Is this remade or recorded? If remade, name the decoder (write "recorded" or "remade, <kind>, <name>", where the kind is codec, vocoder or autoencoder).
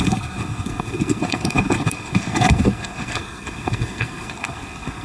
remade, codec, SNAC